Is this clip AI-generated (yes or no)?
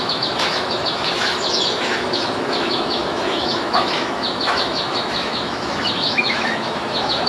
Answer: yes